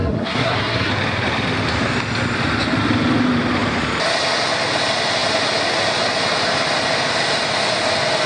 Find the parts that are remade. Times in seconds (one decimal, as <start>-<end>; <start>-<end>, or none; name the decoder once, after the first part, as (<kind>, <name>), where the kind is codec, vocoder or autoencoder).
0.0-0.9 (codec, SNAC)